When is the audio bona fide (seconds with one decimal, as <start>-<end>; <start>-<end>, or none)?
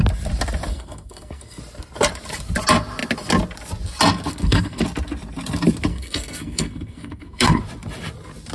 0.0-0.7; 1.6-4.3; 4.8-5.9; 7.6-8.5